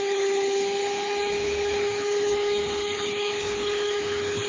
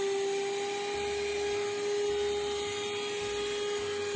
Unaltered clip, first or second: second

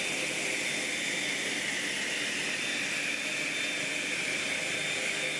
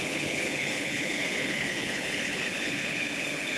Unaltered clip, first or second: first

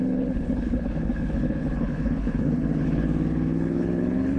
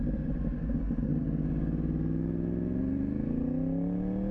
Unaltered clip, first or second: second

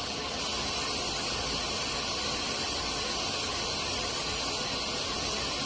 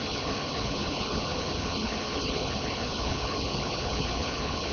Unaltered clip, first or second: first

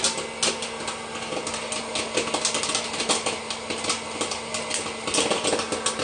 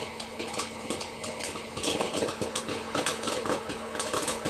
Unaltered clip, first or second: first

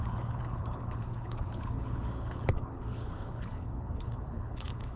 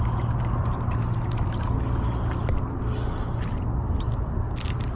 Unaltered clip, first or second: second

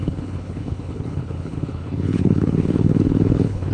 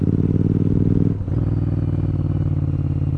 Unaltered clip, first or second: second